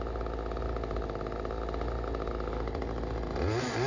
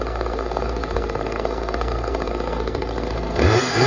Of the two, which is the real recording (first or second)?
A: first